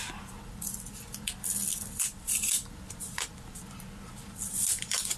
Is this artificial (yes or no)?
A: yes